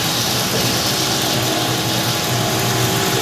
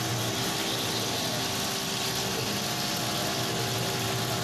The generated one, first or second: first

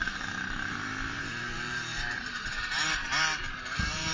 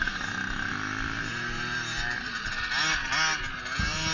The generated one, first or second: first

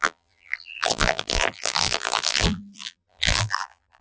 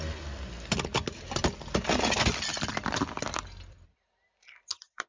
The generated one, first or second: first